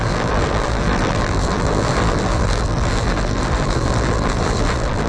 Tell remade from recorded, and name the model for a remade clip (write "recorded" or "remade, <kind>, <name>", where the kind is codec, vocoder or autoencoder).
remade, vocoder, BigVGAN v2